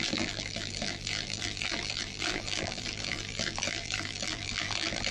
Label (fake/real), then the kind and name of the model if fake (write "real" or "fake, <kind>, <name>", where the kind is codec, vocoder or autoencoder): fake, vocoder, BigVGAN v2